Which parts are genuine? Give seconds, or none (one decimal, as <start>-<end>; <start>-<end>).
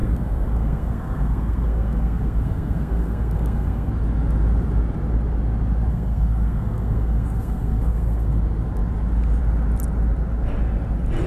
3.9-5.9; 8.4-11.3